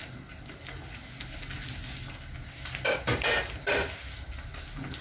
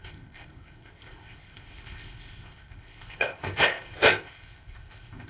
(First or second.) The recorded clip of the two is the first